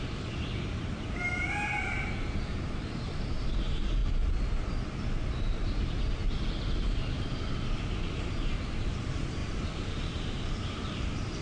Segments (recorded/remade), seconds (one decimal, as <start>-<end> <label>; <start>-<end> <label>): 0.0-4.0 remade; 4.0-5.8 recorded; 5.8-6.2 remade; 6.2-8.3 recorded; 8.3-11.4 remade